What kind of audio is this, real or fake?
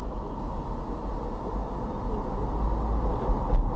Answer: real